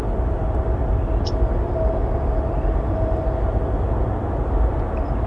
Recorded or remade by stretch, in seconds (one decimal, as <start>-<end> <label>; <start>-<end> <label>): 0.0-5.3 recorded